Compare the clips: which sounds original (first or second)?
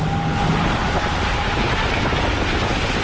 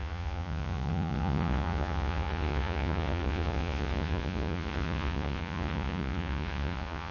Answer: first